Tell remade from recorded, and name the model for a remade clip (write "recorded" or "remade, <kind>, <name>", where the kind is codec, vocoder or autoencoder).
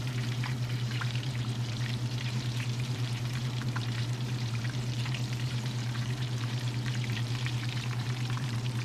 remade, vocoder, BigVGAN v2